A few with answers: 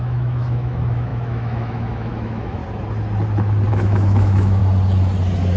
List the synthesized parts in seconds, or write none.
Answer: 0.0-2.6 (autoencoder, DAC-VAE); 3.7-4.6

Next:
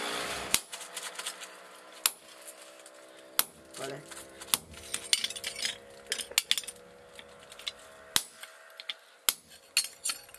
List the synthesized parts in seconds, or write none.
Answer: none